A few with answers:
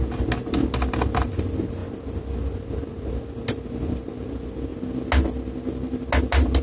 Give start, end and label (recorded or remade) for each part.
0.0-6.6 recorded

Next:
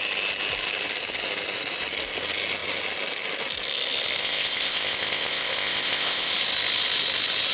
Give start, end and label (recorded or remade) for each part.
0.0-4.2 recorded; 4.2-6.3 remade; 6.3-7.5 recorded

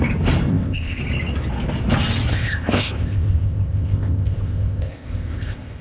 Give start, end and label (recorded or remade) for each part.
0.0-0.5 recorded; 0.5-1.0 remade; 1.0-2.3 recorded; 2.3-5.8 remade

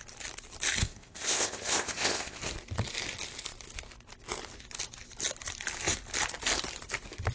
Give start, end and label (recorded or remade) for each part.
0.0-0.8 recorded; 0.8-2.4 remade; 2.4-7.3 recorded

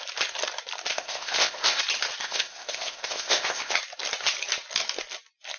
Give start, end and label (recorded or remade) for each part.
0.0-0.9 recorded; 0.9-1.8 remade; 1.8-2.2 recorded; 2.2-3.7 remade; 3.7-5.6 recorded